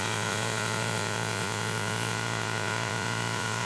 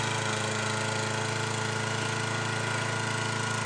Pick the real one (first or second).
second